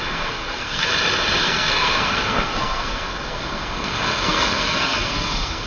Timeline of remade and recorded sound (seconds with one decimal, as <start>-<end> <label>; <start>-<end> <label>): 0.0-0.9 remade; 0.9-1.4 recorded; 1.4-5.7 remade